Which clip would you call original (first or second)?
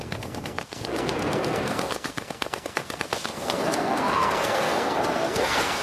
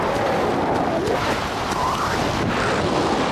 second